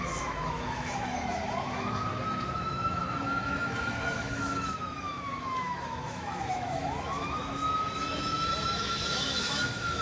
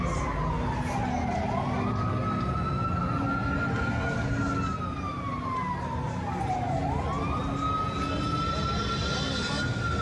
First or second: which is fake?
first